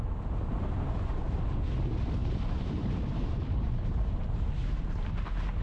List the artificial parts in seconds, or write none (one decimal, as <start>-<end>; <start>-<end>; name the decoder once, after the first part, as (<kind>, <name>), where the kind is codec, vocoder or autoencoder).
2.2-4.1 (vocoder, BigVGAN v2)